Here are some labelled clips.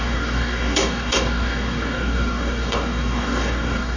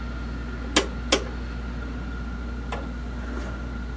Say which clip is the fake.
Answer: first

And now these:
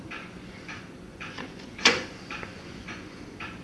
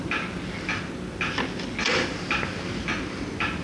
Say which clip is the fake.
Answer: first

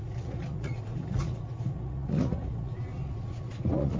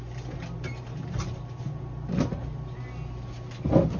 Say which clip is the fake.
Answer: first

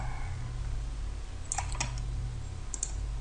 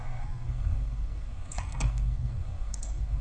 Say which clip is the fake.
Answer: second